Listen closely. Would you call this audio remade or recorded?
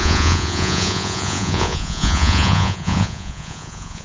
remade